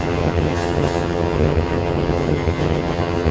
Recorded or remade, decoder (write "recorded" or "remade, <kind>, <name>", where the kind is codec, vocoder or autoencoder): remade, vocoder, HiFi-GAN